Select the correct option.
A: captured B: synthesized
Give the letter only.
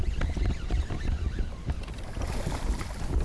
A